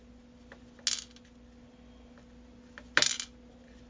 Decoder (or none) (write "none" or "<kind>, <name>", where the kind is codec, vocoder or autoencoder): none